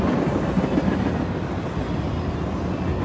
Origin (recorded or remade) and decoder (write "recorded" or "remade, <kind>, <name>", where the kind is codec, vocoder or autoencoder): recorded